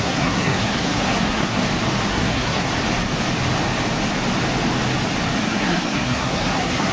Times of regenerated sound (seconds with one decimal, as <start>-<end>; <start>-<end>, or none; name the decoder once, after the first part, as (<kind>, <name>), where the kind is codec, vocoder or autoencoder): 0.0-1.6 (codec, SNAC); 2.1-2.7; 5.4-6.9